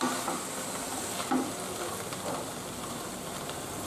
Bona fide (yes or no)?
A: yes